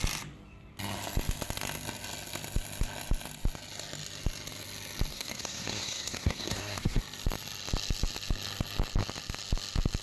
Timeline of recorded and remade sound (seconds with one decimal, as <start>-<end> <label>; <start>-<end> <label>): 0.0-5.1 recorded; 5.1-7.0 remade; 7.0-10.0 recorded